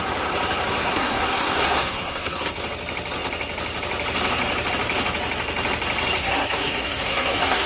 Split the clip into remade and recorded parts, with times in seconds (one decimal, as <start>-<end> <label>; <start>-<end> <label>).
0.0-0.8 recorded; 0.8-2.5 remade; 2.5-6.2 recorded; 6.2-7.7 remade